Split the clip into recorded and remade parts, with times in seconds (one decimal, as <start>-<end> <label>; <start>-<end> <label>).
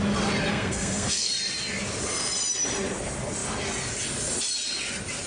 0.0-0.5 recorded; 0.5-1.3 remade; 1.3-5.3 recorded